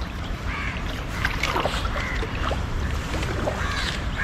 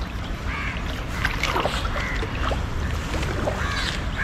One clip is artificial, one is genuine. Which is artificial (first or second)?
first